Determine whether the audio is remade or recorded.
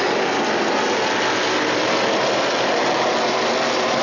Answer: recorded